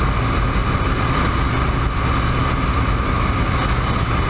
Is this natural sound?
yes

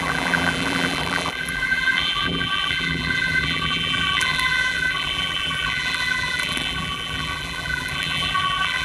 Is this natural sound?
no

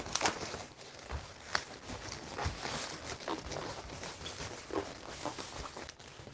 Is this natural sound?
yes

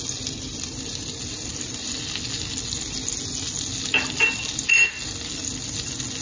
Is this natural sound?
yes